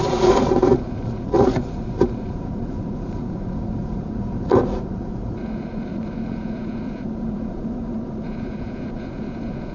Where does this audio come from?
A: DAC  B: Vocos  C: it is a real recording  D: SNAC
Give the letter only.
B